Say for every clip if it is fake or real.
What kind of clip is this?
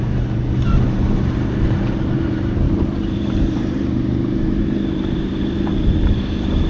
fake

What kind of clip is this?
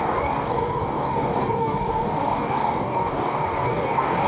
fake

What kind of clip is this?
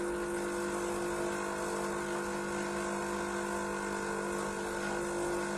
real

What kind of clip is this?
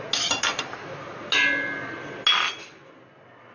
real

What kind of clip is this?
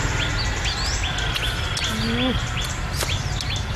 real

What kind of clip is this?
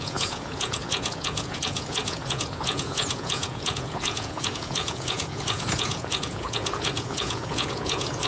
fake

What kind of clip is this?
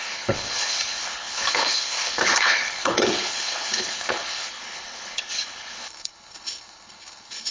fake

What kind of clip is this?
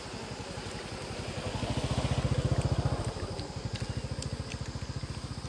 real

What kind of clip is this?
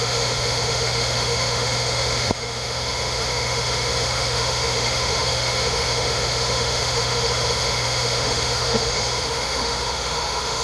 fake